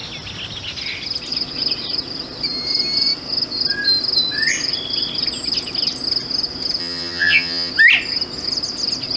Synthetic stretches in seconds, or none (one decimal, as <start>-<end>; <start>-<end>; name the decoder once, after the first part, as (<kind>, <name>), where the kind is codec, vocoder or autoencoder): 6.8-7.7 (vocoder, HiFi-GAN)